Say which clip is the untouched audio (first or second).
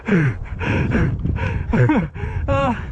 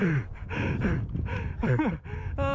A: second